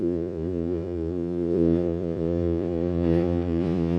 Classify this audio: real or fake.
fake